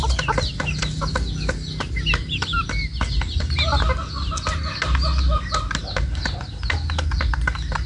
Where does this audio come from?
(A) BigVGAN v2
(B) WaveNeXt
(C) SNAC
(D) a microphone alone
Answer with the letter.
D